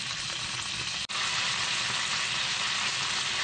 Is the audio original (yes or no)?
yes